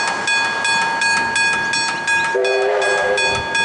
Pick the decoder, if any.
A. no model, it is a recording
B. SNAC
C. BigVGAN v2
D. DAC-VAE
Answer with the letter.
A